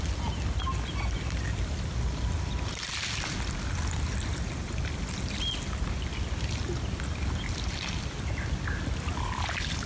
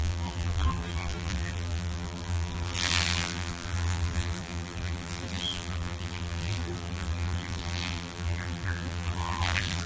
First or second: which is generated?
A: second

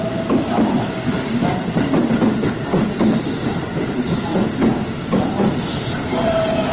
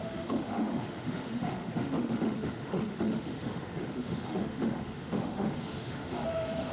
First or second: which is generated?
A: second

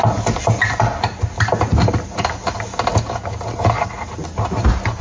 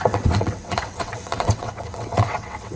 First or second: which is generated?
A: second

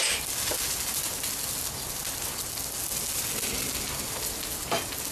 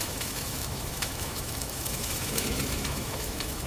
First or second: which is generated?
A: second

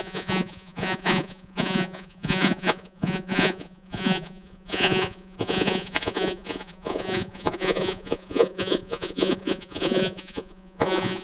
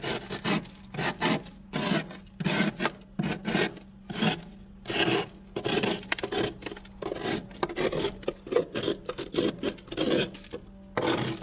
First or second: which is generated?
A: first